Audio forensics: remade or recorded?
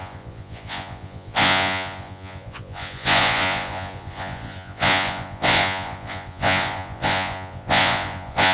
remade